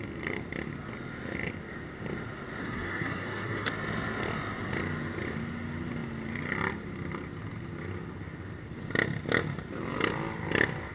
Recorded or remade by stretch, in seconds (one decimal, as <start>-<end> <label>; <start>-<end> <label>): 0.0-2.6 recorded; 2.6-3.7 remade; 3.7-10.9 recorded